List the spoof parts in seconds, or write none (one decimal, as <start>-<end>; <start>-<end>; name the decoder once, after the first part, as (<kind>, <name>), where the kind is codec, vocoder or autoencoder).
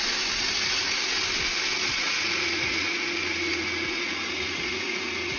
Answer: 2.0-5.4 (vocoder, Vocos)